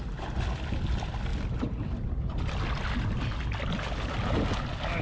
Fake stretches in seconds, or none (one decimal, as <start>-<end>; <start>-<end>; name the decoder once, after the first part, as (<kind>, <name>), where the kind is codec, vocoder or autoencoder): none